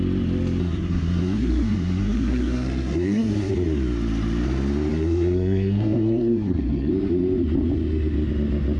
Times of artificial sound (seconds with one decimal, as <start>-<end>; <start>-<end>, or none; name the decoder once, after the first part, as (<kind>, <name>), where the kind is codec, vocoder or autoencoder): 0.6-3.5 (codec, SNAC); 4.9-6.9